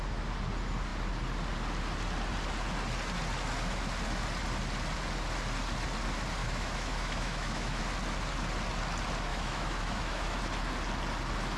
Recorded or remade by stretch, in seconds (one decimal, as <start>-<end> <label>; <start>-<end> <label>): 0.0-6.4 recorded; 6.4-7.8 remade; 7.8-9.3 recorded; 9.3-10.4 remade; 10.4-11.6 recorded